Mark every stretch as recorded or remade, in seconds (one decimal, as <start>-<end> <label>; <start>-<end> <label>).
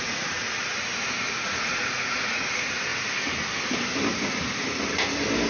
0.0-0.7 remade; 0.7-1.3 recorded; 1.3-2.9 remade; 2.9-5.5 recorded